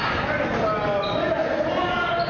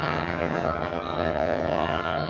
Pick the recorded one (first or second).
first